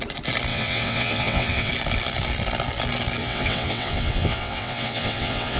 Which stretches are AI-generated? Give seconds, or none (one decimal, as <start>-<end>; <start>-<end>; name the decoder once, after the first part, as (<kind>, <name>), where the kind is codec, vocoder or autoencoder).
0.5-1.7 (vocoder, WaveNeXt); 3.2-5.6